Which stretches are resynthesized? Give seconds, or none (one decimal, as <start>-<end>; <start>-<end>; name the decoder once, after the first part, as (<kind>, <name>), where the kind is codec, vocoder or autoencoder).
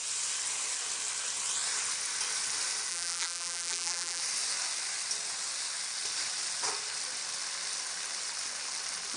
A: 2.9-4.2 (vocoder, BigVGAN v2)